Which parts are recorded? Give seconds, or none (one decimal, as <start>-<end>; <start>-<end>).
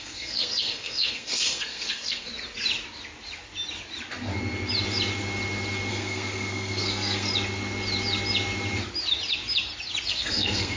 2.3-5.9; 7.3-10.1